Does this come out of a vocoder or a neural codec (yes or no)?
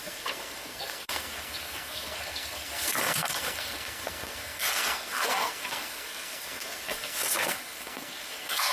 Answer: yes